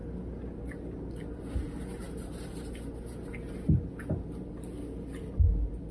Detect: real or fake real